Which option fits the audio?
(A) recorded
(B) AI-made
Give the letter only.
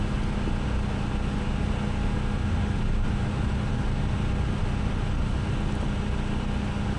A